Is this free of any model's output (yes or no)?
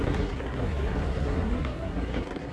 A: no